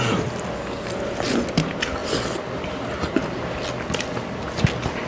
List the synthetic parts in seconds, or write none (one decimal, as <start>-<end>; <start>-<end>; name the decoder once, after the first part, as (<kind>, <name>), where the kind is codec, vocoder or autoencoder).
none